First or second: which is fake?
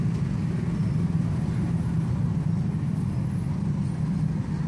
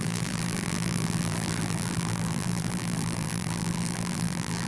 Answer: second